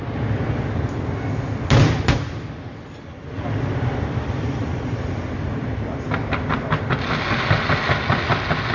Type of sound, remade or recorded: recorded